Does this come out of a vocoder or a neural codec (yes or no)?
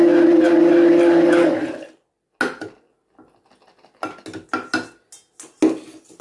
no